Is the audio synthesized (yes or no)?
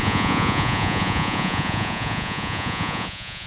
yes